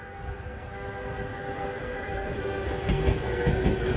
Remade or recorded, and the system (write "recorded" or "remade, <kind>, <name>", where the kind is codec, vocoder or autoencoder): remade, codec, SNAC